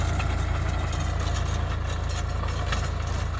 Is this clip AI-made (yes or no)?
no